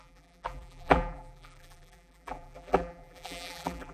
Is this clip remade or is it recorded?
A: remade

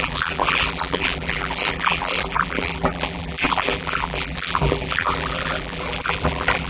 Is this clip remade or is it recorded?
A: remade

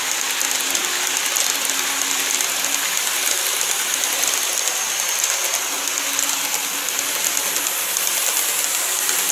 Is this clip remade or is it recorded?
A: recorded